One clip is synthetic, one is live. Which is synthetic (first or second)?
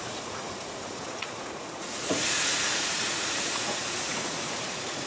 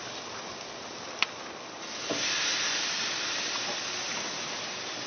first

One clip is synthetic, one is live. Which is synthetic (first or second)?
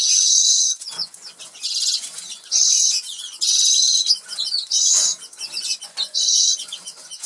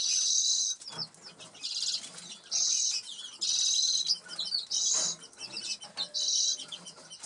first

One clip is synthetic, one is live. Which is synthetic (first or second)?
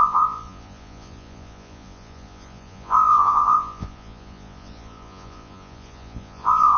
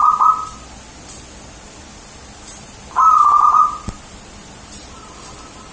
first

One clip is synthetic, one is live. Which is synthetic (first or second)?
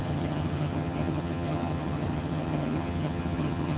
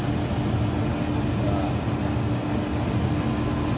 first